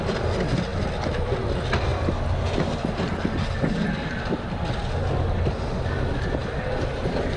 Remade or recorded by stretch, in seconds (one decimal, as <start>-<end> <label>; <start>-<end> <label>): 0.0-0.7 recorded; 0.7-1.3 remade; 1.3-7.4 recorded